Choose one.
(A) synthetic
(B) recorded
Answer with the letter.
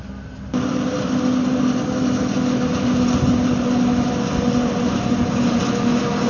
B